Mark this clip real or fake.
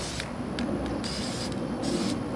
real